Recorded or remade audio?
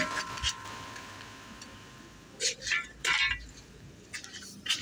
recorded